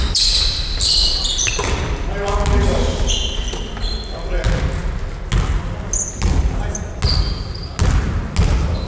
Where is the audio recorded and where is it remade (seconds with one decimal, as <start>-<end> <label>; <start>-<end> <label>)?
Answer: 0.0-8.9 recorded